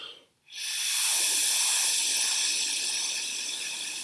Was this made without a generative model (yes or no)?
yes